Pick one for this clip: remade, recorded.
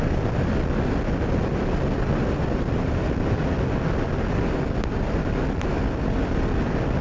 recorded